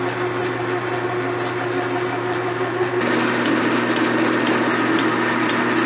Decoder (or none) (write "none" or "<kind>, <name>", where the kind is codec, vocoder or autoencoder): vocoder, BigVGAN v2